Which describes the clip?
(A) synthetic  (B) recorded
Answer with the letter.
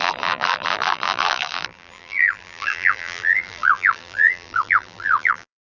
A